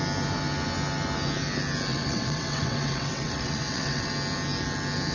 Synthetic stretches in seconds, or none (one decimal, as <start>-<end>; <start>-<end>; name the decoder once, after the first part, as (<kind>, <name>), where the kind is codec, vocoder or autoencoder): 1.9-4.1 (vocoder, WaveNeXt)